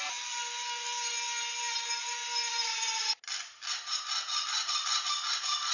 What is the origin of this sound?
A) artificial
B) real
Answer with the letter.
B